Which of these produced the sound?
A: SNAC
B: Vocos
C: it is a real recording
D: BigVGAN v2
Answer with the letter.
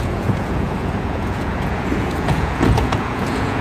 B